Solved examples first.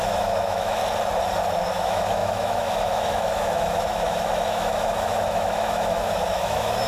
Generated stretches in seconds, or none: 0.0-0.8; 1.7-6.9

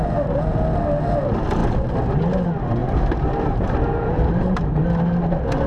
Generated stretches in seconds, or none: 2.8-4.8

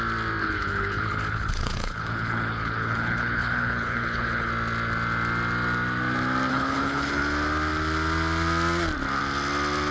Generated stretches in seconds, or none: 0.4-4.5; 6.5-7.2

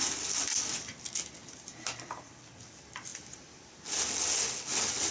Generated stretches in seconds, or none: none

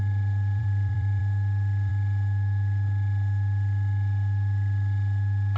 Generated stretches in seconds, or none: 0.6-1.2

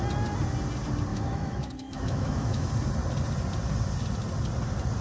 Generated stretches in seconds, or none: 1.1-2.7

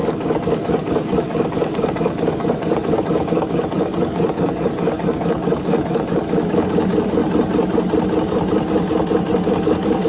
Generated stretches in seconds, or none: 0.0-7.2; 9.4-10.1

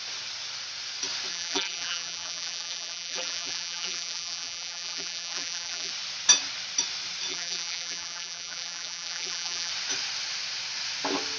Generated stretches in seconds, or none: 1.3-5.9; 7.3-9.7